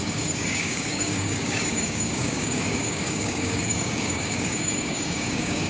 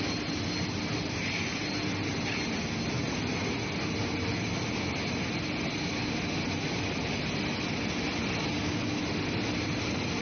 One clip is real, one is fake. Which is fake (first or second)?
first